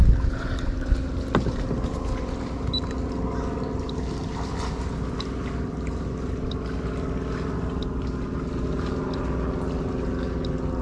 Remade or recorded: recorded